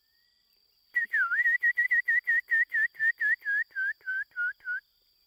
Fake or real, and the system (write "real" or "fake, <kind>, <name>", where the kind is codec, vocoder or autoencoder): real